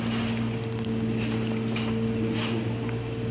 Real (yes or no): yes